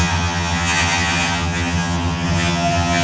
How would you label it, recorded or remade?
remade